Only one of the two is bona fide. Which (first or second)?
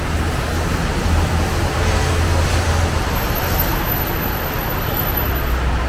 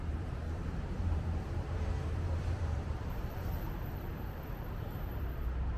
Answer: first